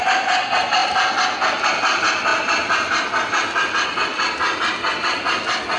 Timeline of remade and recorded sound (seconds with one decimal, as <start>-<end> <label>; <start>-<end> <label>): 0.0-5.8 recorded